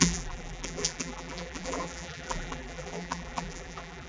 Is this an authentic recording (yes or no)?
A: no